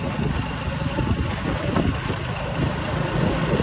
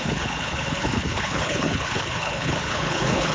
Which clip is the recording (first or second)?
first